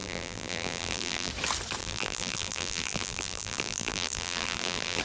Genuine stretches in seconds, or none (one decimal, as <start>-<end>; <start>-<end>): 1.3-1.8